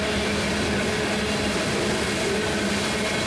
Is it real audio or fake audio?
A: real